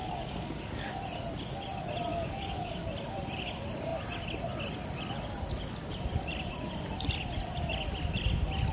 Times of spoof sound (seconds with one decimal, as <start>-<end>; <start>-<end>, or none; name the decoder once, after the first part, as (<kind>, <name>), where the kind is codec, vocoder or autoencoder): 0.0-0.9 (codec, DAC); 2.1-2.7